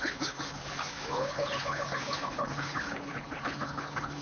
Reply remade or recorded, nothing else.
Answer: remade